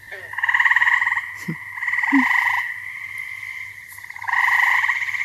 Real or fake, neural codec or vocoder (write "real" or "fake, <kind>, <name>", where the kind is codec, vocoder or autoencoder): real